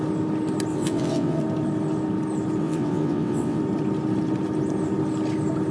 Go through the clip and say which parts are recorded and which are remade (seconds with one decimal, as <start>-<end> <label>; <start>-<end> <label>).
0.0-0.7 recorded; 0.7-1.4 remade; 1.4-2.6 recorded; 2.6-3.6 remade; 3.6-5.7 recorded